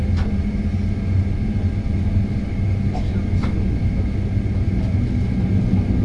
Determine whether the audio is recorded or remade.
recorded